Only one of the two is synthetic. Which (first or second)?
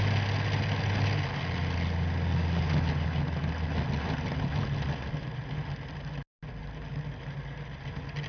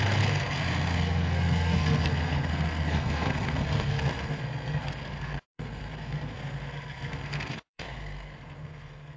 second